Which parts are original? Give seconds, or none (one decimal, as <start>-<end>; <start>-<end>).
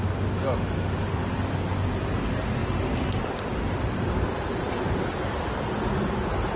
0.0-6.6